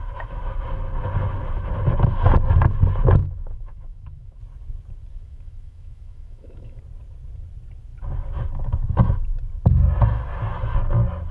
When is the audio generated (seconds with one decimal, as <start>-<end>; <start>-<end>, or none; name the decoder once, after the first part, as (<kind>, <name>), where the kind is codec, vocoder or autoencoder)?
3.2-4.4 (autoencoder, DAC-VAE); 5.1-6.8